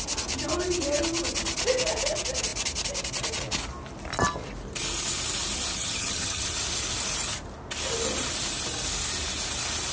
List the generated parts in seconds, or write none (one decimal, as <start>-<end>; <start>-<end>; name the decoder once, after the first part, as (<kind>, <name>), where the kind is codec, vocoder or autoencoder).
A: 5.7-6.5 (vocoder, HiFi-GAN)